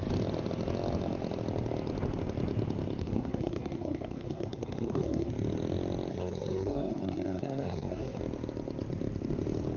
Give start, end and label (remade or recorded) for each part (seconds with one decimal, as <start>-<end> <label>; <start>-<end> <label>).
0.0-3.0 recorded; 3.0-5.3 remade; 5.3-6.1 recorded; 6.1-8.2 remade; 8.2-9.8 recorded

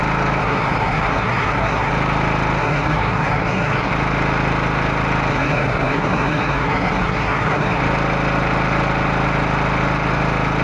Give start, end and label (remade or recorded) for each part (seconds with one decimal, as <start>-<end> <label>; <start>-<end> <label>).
0.0-0.4 recorded; 0.4-1.9 remade; 1.9-2.6 recorded; 2.6-3.9 remade; 3.9-5.3 recorded; 5.3-7.8 remade; 7.8-10.6 recorded

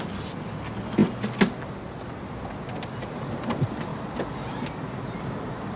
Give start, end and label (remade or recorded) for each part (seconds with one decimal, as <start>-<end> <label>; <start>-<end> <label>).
0.0-5.8 recorded

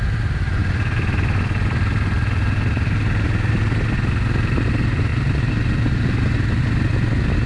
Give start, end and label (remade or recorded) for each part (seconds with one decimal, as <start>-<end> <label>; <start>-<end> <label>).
0.0-7.5 recorded

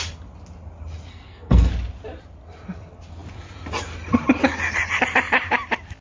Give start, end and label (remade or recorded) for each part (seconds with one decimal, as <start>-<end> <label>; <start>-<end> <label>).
0.0-1.1 recorded; 1.1-1.7 remade; 1.7-6.0 recorded